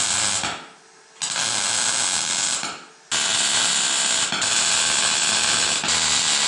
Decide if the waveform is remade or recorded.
recorded